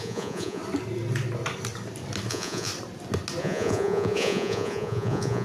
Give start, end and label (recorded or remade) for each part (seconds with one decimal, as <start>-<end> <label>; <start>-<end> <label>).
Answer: 0.0-0.6 remade; 0.6-2.3 recorded; 2.3-2.7 remade; 2.7-3.4 recorded; 3.4-5.4 remade